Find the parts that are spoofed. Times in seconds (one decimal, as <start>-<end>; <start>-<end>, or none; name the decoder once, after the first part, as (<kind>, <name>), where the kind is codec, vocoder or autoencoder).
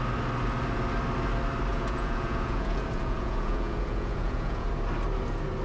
1.7-4.7 (vocoder, Vocos)